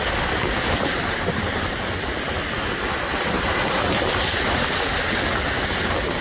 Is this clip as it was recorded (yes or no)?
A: yes